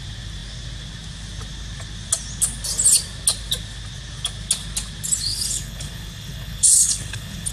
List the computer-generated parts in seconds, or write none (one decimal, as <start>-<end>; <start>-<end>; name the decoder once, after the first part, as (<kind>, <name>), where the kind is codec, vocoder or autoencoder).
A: 5.3-7.5 (codec, HILCodec)